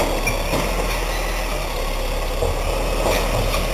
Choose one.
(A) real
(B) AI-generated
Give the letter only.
A